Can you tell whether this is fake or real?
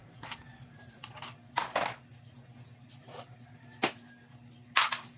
fake